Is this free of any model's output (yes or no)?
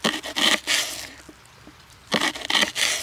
yes